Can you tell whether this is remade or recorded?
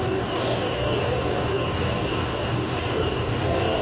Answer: remade